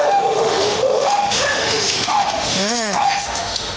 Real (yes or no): no